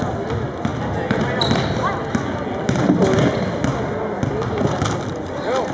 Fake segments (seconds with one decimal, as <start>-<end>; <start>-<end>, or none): none